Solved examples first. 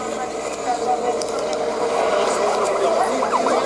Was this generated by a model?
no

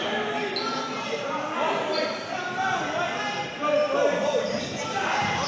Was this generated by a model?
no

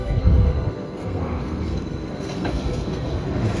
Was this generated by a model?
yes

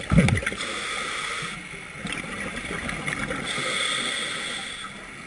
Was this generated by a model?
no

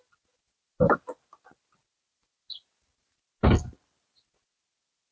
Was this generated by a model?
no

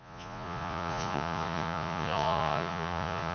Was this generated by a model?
yes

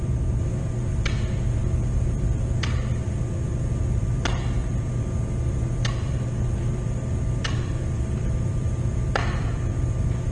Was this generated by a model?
yes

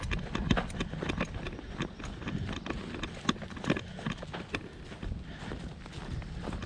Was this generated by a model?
no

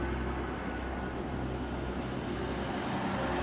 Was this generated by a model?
no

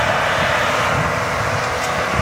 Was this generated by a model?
no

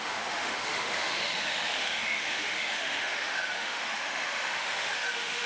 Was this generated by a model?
yes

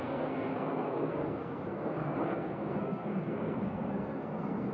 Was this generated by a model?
yes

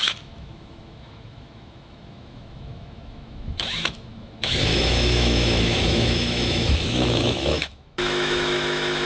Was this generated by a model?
yes